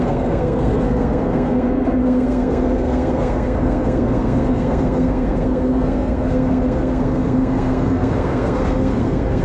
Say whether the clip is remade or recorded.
remade